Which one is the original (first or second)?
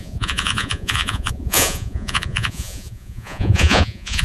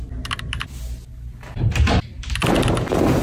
second